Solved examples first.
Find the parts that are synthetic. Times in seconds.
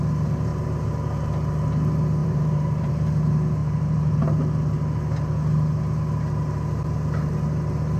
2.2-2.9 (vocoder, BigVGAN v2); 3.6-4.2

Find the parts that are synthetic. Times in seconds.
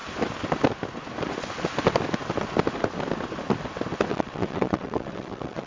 4.1-5.7 (vocoder, WaveNeXt)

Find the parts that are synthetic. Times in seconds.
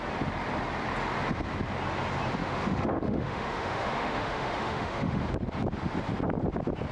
2.4-5.2 (autoencoder, DAC-VAE)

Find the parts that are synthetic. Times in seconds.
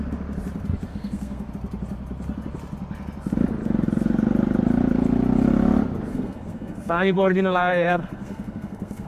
0.9-1.5 (codec, SNAC); 6.1-9.1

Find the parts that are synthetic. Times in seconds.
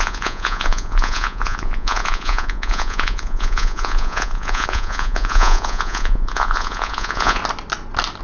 0.0-7.4 (vocoder, Vocos)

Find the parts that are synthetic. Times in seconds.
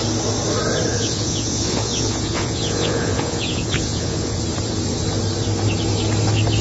0.9-4.4 (vocoder, Vocos)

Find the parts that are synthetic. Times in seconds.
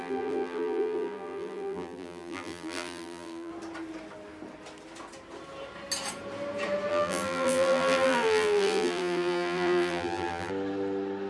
0.0-3.5 (vocoder, BigVGAN v2); 6.9-10.5